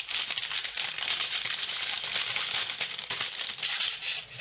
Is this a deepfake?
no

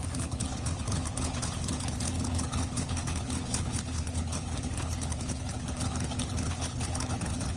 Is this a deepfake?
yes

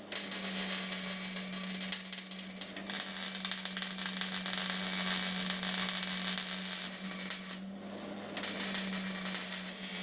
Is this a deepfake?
no